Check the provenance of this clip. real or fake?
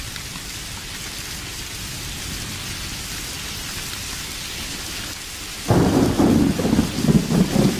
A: real